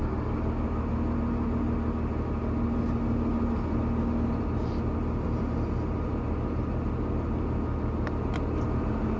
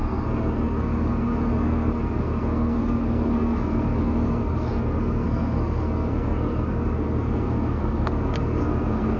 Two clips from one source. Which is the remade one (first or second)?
second